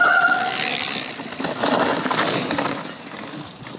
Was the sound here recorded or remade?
recorded